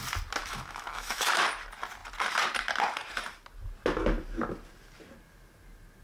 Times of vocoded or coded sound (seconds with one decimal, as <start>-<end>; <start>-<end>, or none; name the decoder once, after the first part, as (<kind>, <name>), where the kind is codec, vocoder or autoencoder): 0.4-1.4 (autoencoder, DAC-VAE)